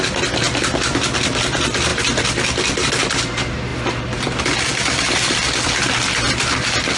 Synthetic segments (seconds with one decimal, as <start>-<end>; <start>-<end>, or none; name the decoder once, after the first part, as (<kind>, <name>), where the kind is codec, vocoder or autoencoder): none